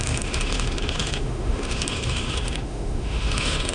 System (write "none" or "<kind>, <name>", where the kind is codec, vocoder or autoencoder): autoencoder, DAC-VAE